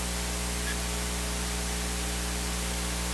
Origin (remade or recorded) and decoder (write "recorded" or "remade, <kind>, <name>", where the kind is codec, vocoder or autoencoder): recorded